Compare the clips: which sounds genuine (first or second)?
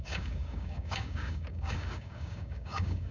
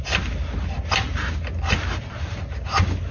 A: second